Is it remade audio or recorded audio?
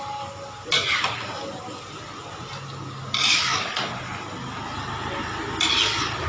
recorded